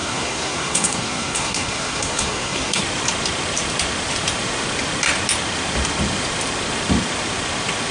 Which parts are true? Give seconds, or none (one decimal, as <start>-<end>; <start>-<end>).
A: 2.8-7.9